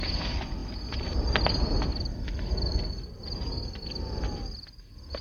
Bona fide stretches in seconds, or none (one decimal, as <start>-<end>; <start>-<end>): 0.0-5.2